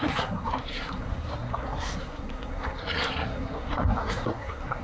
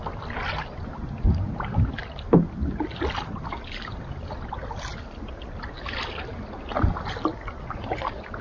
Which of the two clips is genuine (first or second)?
second